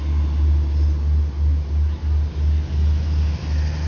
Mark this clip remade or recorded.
recorded